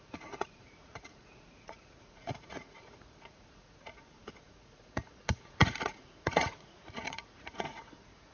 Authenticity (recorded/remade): remade